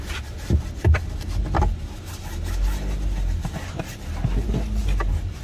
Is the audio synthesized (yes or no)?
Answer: no